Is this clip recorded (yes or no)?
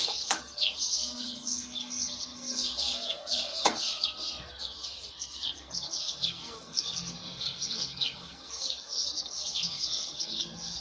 no